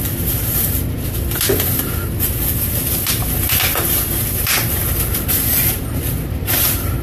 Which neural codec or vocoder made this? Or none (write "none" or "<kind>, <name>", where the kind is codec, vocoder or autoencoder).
none